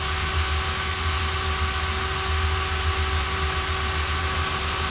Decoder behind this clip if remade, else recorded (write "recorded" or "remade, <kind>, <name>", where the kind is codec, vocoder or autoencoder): recorded